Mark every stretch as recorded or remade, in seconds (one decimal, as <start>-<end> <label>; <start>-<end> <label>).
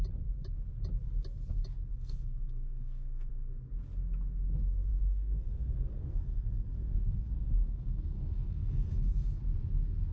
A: 0.0-1.9 recorded; 1.9-3.3 remade; 3.3-4.9 recorded; 4.9-9.4 remade; 9.4-10.1 recorded